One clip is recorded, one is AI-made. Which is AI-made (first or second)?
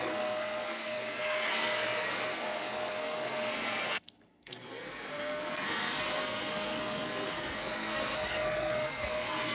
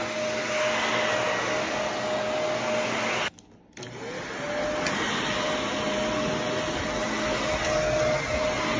first